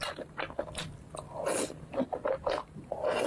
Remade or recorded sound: recorded